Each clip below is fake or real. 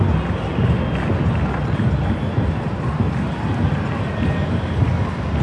real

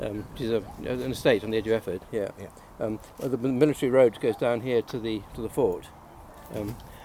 real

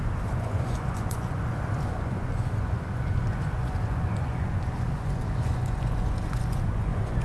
fake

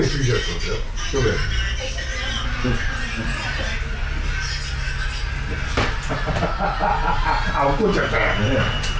real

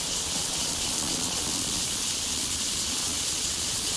fake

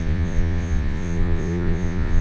fake